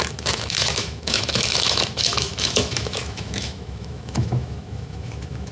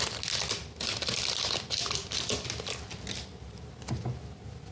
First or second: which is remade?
first